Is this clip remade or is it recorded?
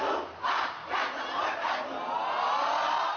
recorded